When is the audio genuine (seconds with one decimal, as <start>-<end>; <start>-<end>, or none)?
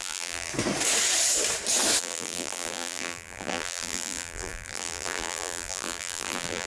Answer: 0.5-2.0